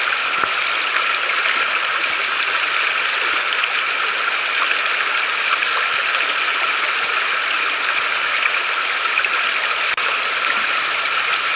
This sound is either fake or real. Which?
real